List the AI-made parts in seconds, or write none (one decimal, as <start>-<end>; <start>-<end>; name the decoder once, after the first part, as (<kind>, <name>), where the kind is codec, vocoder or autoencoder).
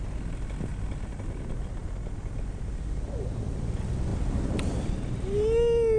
4.1-4.6 (vocoder, BigVGAN v2)